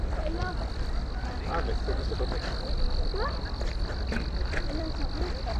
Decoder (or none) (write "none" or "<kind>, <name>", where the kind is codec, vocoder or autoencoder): vocoder, BigVGAN v2